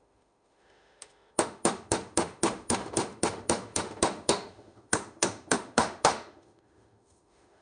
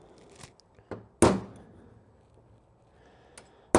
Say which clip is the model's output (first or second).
first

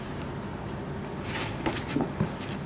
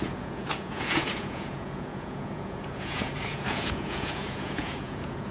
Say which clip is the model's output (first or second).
second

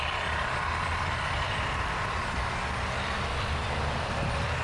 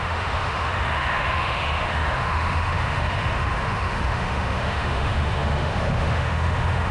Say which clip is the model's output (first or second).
second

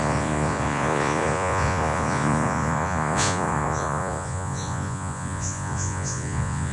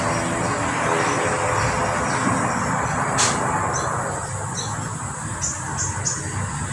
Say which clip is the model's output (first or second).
first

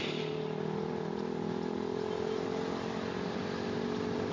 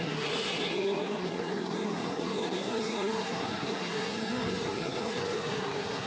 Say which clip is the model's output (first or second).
second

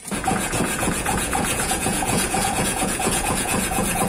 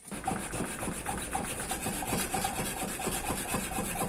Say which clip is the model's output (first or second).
first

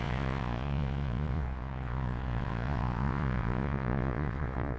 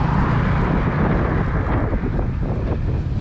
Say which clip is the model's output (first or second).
first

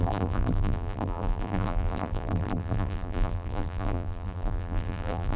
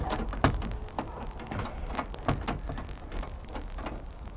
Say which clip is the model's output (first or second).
first